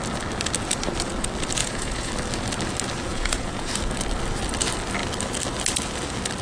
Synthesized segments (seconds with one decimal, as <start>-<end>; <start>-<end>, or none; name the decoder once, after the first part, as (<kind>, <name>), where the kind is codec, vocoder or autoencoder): 1.6-2.1 (vocoder, Vocos); 3.1-3.7